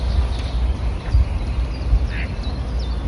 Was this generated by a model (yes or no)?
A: no